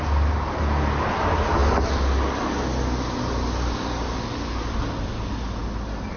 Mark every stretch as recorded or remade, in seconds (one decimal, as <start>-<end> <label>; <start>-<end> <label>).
0.0-6.2 recorded